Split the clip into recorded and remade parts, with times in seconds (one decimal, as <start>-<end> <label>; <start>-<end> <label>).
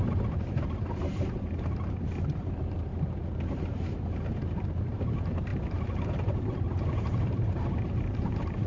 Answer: 0.0-2.9 remade; 2.9-3.5 recorded; 3.5-8.7 remade